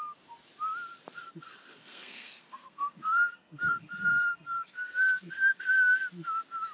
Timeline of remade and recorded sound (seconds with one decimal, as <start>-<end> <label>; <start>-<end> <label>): 0.0-1.6 recorded; 1.6-5.6 remade; 5.6-6.7 recorded